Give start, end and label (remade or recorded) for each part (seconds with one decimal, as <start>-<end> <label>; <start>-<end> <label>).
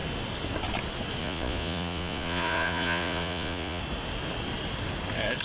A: 0.0-1.2 recorded; 1.2-3.8 remade; 3.8-5.4 recorded